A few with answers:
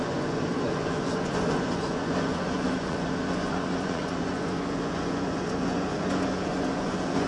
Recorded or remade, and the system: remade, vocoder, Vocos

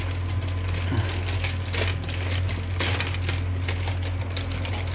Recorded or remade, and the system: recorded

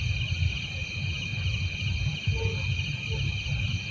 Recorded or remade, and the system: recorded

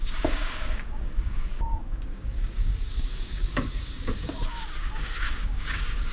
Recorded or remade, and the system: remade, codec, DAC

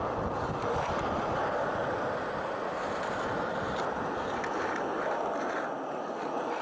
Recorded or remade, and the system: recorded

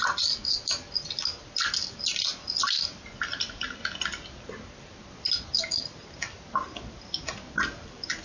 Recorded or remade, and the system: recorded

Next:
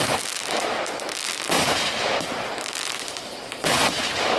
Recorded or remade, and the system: recorded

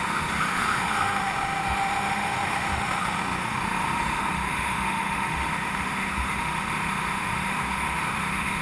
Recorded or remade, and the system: remade, autoencoder, DAC-VAE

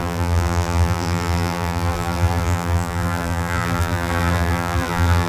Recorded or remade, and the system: remade, vocoder, BigVGAN v2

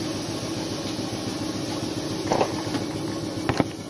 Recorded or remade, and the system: recorded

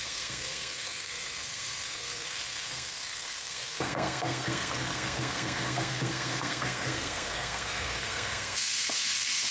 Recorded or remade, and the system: remade, codec, SNAC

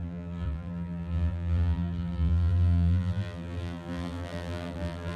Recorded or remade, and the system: remade, vocoder, BigVGAN v2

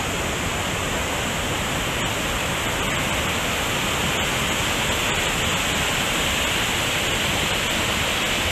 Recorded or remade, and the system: recorded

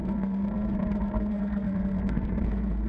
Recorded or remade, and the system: remade, codec, SNAC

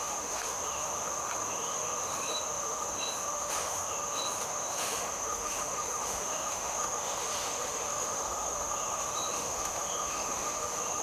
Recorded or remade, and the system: remade, autoencoder, DAC-VAE